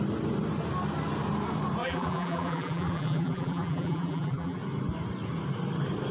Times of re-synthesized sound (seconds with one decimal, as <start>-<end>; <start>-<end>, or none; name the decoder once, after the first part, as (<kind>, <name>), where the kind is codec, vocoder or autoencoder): 1.8-4.6 (vocoder, BigVGAN v2)